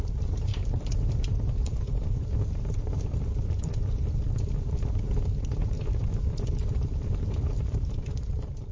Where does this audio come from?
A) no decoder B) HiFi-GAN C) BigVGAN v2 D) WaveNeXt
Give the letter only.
C